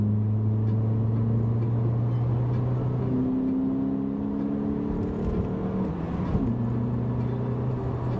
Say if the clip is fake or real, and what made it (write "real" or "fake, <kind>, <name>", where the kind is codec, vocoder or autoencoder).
real